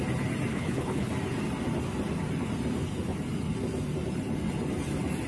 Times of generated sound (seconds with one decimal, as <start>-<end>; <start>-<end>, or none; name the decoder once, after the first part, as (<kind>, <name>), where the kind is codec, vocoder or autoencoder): 0.5-1.1 (codec, HILCodec)